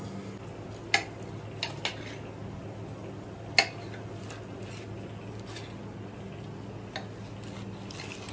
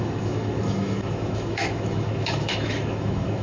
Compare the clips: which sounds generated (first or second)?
second